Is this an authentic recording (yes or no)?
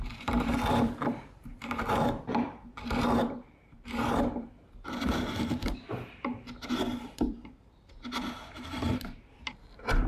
no